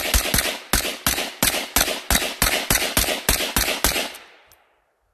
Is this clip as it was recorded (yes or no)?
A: yes